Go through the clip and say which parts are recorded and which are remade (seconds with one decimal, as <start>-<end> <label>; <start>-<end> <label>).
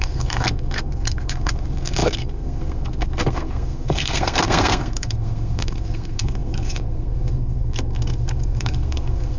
0.0-9.4 remade